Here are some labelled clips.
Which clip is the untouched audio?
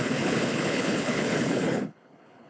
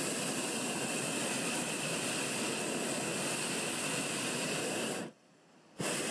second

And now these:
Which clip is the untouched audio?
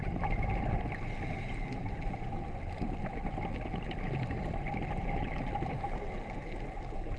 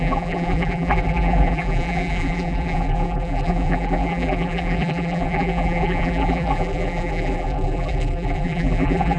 first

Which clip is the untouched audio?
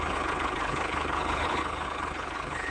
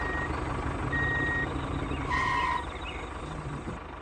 second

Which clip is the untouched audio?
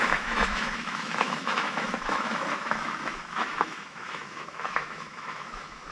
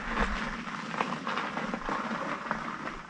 second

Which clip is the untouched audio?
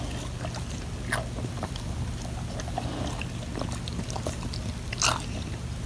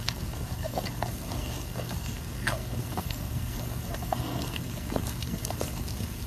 first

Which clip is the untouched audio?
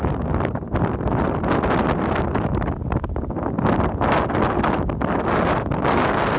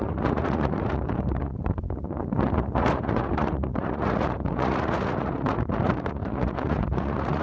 first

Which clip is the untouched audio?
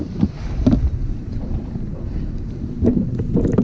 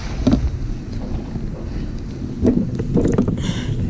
second